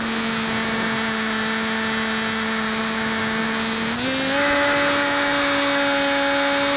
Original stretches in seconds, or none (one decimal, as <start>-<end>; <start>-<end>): 0.0-6.8